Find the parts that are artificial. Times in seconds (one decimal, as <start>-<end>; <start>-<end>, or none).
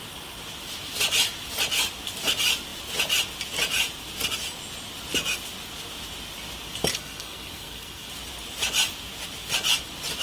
6.9-8.1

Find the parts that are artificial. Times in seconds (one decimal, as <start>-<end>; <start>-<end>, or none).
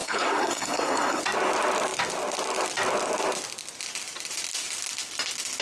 0.0-1.2